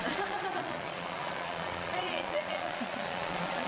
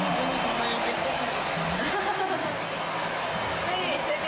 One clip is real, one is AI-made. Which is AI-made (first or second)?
first